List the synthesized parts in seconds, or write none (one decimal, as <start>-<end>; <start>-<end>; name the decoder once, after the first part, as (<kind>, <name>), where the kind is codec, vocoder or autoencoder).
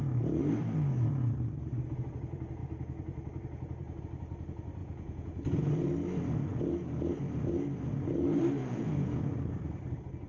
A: 4.8-5.7 (vocoder, Vocos); 8.6-9.3